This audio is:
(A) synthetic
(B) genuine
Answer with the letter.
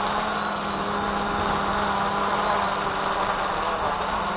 B